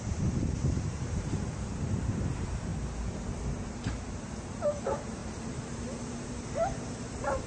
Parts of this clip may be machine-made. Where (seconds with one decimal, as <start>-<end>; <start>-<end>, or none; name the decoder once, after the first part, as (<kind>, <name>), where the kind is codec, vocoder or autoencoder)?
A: 0.0-2.7 (vocoder, BigVGAN v2); 3.7-7.5